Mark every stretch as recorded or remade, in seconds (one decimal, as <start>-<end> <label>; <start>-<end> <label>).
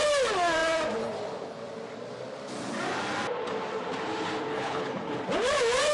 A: 0.0-4.5 recorded; 4.5-5.2 remade; 5.2-5.9 recorded